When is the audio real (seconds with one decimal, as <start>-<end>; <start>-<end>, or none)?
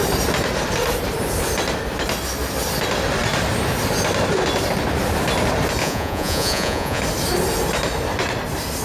0.0-5.8; 7.0-8.8